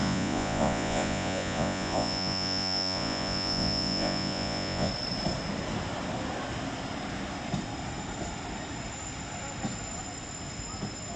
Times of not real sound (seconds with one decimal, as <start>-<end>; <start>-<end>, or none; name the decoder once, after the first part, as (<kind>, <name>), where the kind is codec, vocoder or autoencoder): 0.0-4.9 (vocoder, Vocos)